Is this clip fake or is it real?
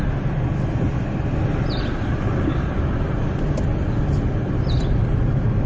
real